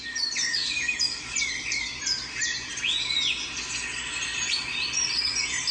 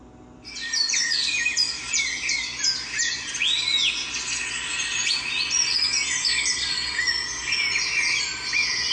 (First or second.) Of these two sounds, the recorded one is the second